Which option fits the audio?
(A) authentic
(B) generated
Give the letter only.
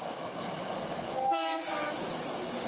B